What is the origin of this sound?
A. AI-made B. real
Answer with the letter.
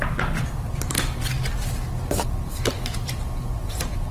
A